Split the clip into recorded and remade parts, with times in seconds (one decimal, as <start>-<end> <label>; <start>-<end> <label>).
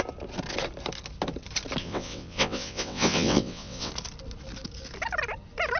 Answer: 0.0-1.8 recorded; 1.8-3.9 remade; 3.9-5.8 recorded